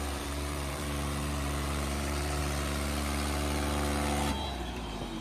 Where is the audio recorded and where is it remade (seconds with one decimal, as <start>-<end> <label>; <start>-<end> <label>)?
0.0-2.4 remade; 2.4-4.3 recorded; 4.3-5.2 remade